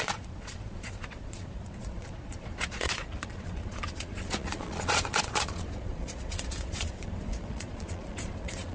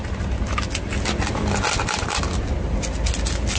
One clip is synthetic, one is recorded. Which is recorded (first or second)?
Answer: second